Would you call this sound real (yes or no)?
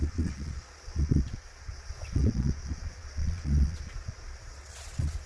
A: no